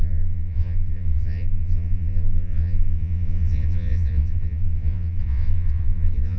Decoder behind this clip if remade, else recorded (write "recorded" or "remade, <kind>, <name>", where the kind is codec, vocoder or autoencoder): remade, vocoder, Vocos